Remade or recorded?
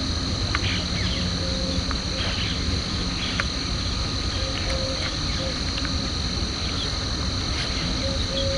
recorded